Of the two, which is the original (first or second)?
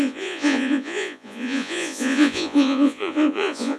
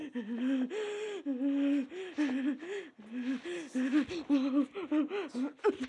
second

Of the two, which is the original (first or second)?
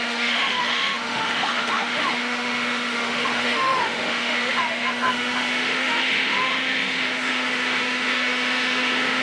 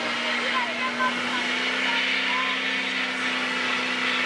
second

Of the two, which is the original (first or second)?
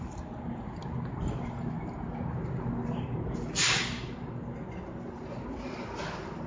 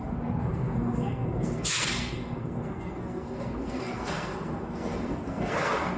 first